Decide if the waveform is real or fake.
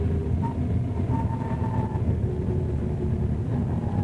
real